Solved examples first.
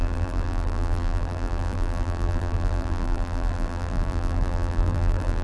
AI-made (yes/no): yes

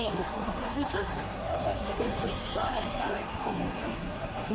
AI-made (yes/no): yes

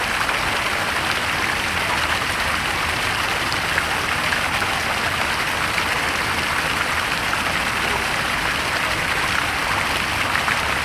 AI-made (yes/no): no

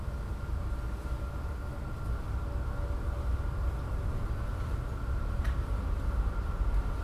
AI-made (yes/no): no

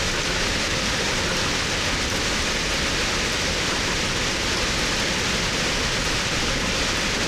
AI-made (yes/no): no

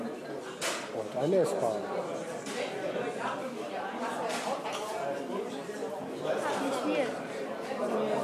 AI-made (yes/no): no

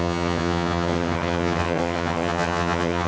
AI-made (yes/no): yes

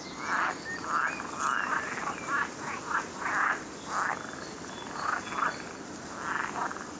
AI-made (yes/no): no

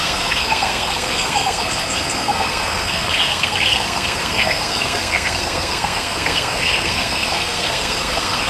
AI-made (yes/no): yes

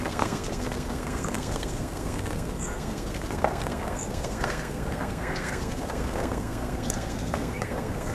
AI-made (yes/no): yes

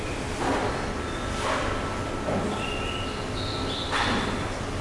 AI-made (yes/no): no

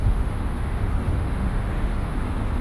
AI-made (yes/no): yes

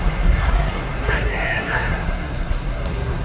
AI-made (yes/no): yes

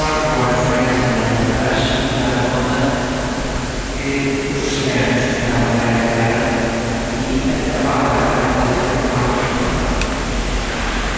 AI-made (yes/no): no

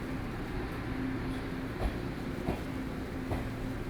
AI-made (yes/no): no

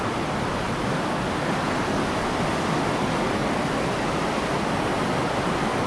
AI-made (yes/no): no